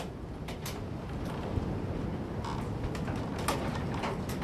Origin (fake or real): real